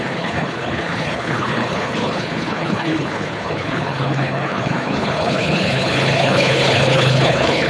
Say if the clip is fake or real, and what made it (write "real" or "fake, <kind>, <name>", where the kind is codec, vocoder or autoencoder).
fake, codec, HILCodec